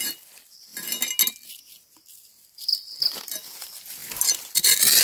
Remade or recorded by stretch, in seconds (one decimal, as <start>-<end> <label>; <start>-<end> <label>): 0.0-0.7 remade; 0.7-2.1 recorded; 2.1-5.0 remade

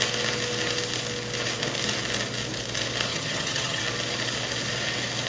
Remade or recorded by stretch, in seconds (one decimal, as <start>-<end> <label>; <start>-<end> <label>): 0.0-3.1 recorded; 3.1-3.8 remade; 3.8-5.3 recorded

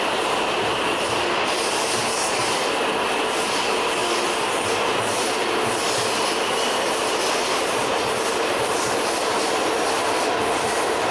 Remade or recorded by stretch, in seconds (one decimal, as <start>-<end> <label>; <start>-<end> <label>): 0.0-11.1 recorded

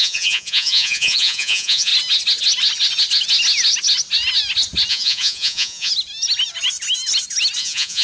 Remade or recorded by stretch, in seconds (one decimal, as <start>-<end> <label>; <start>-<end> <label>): 0.0-1.9 remade; 1.9-4.9 recorded; 4.9-5.9 remade; 5.9-7.6 recorded; 7.6-8.0 remade

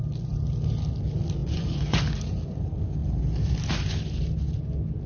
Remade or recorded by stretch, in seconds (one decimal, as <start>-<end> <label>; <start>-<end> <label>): 0.0-1.4 recorded; 1.4-2.0 remade; 2.0-5.1 recorded

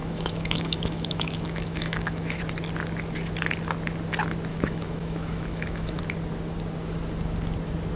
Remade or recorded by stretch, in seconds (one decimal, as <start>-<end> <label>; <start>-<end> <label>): 0.0-2.4 remade; 2.4-4.5 recorded; 4.5-6.0 remade; 6.0-8.0 recorded

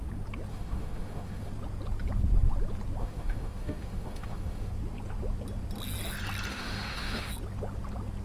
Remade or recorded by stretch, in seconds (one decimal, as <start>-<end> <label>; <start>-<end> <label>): 0.0-0.5 recorded; 0.5-1.5 remade; 1.5-3.0 recorded; 3.0-4.7 remade; 4.7-6.5 recorded; 6.5-7.3 remade; 7.3-8.2 recorded

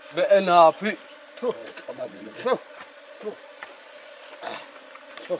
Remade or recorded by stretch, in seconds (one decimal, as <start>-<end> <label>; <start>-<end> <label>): 0.0-1.6 recorded; 1.6-4.4 remade; 4.4-5.4 recorded